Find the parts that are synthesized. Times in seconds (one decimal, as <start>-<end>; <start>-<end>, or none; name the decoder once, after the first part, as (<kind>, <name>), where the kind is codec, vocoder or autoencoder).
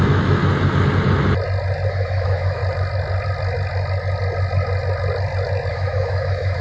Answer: 0.0-0.4 (autoencoder, DAC-VAE); 1.9-2.6; 5.7-6.6